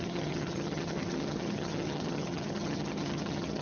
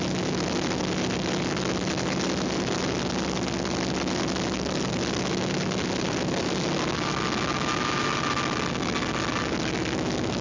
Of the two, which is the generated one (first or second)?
first